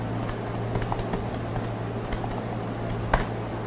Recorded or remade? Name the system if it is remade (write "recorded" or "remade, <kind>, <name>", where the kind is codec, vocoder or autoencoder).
recorded